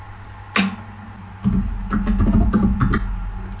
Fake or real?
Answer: real